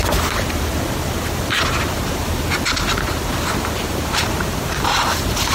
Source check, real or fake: real